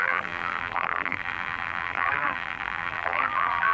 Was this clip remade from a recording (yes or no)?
yes